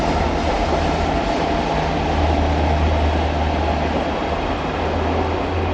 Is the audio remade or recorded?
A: recorded